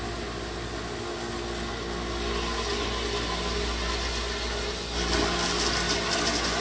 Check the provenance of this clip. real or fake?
real